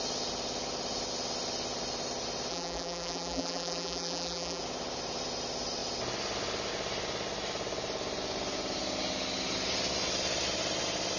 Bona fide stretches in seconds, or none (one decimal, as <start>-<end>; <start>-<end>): 0.0-2.5; 4.6-11.2